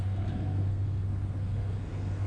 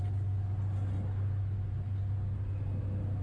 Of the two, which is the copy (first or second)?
first